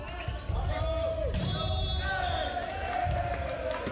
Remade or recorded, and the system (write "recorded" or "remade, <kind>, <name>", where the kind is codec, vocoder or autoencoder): recorded